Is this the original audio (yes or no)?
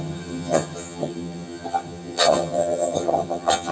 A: no